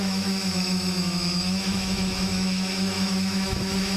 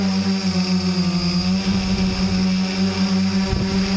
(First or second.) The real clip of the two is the second